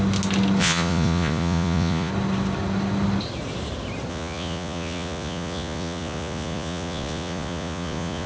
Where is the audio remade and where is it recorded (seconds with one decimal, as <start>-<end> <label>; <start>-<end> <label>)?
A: 0.0-0.6 recorded; 0.6-2.1 remade; 2.1-4.1 recorded; 4.1-8.3 remade

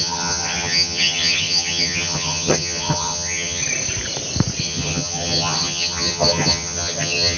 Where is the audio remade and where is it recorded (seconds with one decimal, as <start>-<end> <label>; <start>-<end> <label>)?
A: 0.0-3.6 remade; 3.6-4.6 recorded; 4.6-7.4 remade

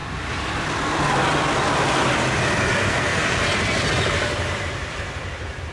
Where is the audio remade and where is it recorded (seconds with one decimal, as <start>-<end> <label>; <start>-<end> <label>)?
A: 0.0-2.8 recorded; 2.8-3.4 remade; 3.4-5.7 recorded

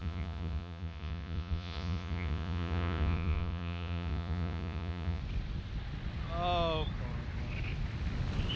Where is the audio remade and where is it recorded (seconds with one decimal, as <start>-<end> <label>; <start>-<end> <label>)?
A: 0.0-5.2 remade; 5.2-8.6 recorded

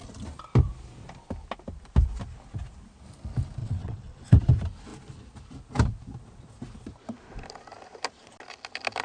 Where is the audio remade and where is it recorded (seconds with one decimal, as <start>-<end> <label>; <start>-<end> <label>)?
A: 0.0-3.6 recorded; 3.6-4.4 remade; 4.4-9.0 recorded

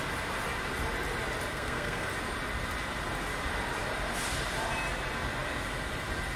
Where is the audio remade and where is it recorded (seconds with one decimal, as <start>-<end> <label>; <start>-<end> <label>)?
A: 0.0-1.5 recorded; 1.5-2.1 remade; 2.1-6.4 recorded